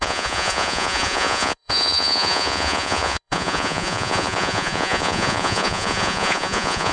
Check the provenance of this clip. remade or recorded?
remade